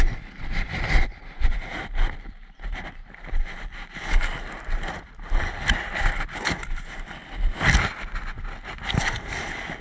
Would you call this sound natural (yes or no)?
yes